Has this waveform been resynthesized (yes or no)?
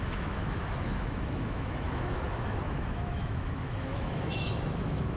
yes